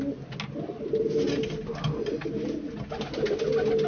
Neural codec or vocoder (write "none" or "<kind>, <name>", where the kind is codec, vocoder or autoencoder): none